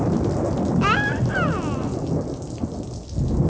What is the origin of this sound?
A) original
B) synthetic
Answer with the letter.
A